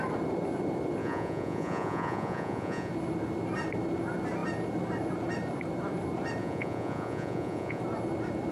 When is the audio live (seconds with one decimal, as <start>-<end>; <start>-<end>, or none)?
0.0-1.0; 2.9-6.4; 7.8-8.5